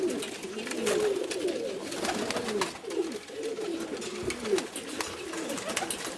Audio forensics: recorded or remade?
recorded